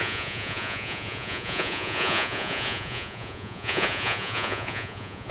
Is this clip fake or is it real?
fake